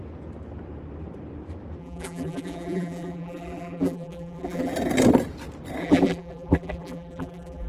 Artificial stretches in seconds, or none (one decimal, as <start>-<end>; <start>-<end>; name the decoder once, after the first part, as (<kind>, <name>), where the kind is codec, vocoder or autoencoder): 1.8-4.7 (vocoder, BigVGAN v2); 5.8-7.7